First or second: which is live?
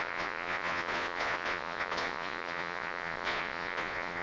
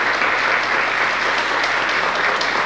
second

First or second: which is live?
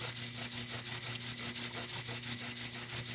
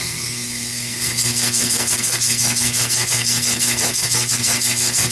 first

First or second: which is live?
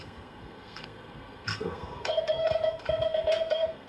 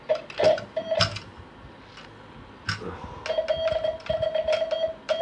second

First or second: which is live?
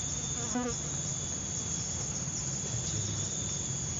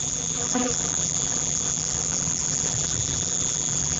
first